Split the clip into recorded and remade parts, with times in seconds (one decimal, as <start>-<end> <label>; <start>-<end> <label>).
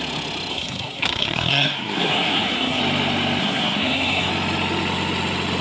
0.0-0.5 recorded; 0.5-2.8 remade; 2.8-3.4 recorded; 3.4-4.3 remade; 4.3-5.6 recorded